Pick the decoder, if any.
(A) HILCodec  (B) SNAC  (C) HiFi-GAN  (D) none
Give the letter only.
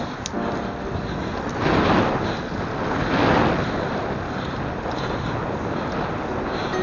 D